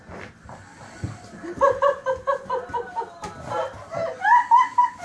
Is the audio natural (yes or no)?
no